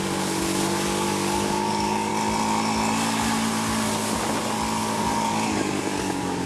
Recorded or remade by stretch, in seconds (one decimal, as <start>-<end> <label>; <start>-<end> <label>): 0.0-2.1 remade; 2.1-4.8 recorded; 4.8-6.5 remade